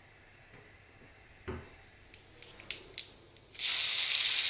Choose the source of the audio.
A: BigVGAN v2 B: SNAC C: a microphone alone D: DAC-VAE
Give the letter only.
C